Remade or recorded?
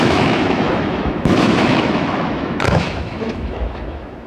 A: remade